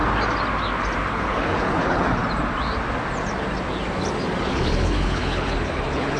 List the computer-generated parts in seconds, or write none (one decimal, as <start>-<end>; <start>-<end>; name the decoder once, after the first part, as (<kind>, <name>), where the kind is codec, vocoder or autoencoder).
1.1-2.2 (codec, HILCodec); 4.4-6.2